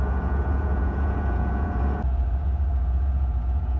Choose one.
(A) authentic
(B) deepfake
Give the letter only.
B